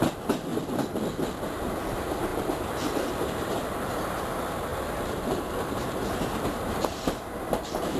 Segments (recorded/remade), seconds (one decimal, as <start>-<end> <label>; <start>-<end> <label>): 0.0-0.5 remade; 0.5-1.9 recorded; 1.9-8.0 remade